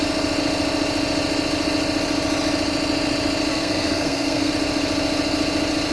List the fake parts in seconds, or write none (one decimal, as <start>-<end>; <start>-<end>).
3.5-4.5